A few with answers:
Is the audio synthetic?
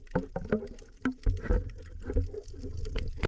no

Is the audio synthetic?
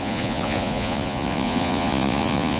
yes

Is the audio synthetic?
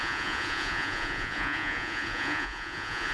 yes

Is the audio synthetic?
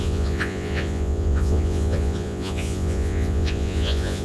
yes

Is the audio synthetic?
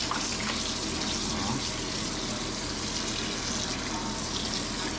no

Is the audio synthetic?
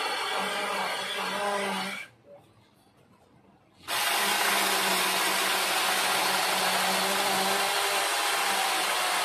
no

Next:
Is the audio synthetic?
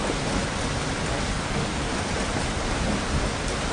no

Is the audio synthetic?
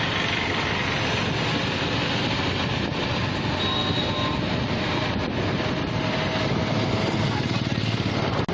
no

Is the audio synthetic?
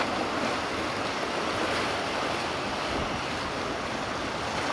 no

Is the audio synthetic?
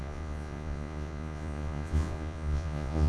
yes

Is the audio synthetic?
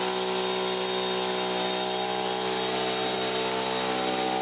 no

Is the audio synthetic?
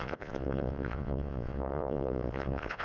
yes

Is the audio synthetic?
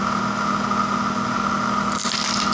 no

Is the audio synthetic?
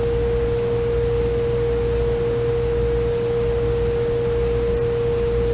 no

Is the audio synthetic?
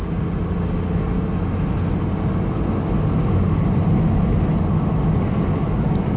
no